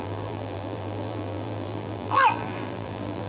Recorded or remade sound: remade